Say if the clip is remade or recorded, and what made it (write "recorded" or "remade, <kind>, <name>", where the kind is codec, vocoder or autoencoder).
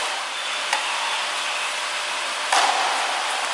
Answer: recorded